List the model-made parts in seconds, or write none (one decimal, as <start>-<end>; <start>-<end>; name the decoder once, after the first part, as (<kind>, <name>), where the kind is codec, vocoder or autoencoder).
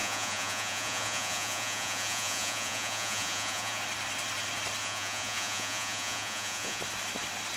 0.0-3.8 (vocoder, Vocos); 4.8-6.8